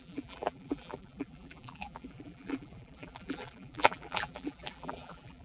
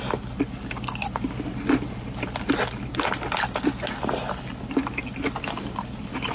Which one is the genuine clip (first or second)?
second